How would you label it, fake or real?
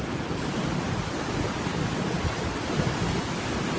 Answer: real